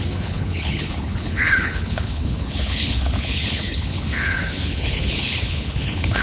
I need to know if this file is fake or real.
fake